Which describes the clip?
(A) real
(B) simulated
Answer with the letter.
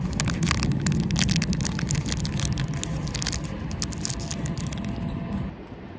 A